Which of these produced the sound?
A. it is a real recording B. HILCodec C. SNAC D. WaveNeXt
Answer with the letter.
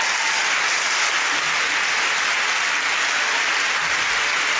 A